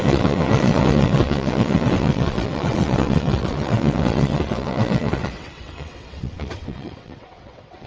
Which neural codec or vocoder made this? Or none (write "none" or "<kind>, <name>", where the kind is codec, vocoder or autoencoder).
vocoder, WaveNeXt